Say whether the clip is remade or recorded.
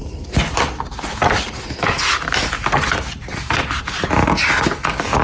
recorded